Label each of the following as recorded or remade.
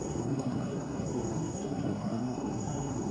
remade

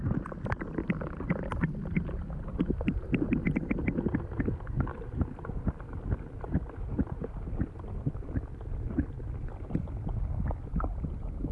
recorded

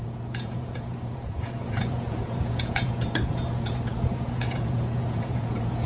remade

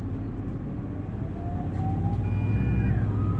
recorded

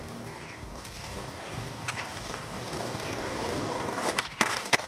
remade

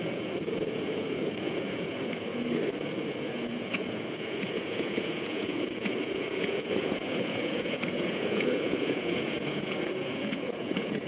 remade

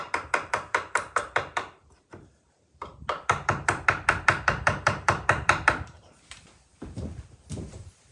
remade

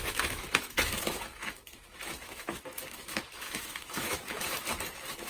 remade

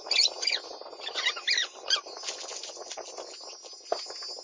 recorded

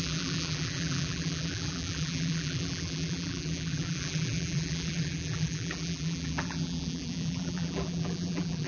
remade